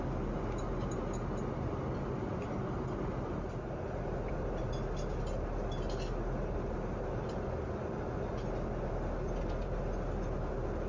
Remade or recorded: recorded